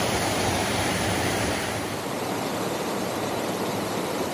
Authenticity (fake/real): fake